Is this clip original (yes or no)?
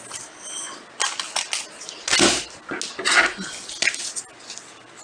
yes